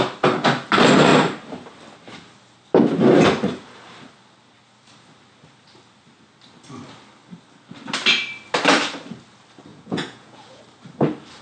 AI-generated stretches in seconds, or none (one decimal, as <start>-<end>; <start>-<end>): 9.7-10.6